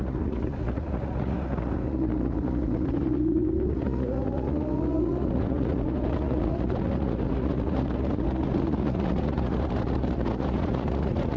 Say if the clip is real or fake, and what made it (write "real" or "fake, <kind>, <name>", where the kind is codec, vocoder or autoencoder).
fake, vocoder, Vocos